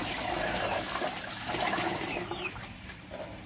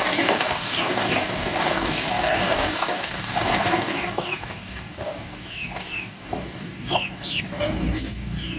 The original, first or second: first